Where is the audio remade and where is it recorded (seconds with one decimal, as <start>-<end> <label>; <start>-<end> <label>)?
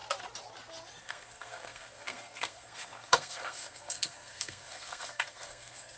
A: 0.0-1.0 recorded; 1.0-6.0 remade